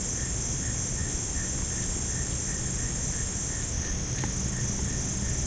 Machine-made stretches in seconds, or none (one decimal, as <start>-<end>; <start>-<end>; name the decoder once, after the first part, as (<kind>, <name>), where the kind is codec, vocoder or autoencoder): none